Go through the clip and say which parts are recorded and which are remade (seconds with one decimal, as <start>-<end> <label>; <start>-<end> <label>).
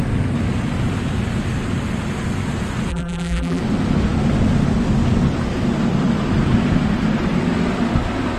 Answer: 0.0-2.9 recorded; 2.9-3.6 remade; 3.6-8.4 recorded